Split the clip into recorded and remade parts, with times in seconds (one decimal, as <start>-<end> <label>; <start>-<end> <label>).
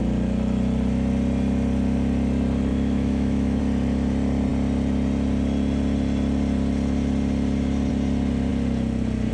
0.0-2.7 recorded; 2.7-3.6 remade; 3.6-9.3 recorded